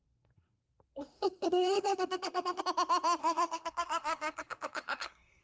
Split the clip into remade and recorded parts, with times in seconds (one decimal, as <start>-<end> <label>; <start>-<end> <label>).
0.0-2.6 remade; 2.6-3.2 recorded; 3.2-5.4 remade